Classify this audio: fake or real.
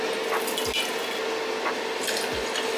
real